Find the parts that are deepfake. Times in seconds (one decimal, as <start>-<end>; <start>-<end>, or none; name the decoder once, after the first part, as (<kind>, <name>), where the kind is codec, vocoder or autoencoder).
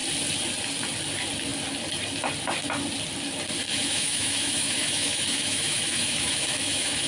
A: 3.7-7.1 (autoencoder, DAC-VAE)